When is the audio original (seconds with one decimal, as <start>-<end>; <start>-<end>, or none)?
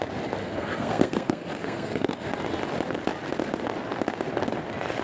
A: 0.0-0.4; 2.3-5.0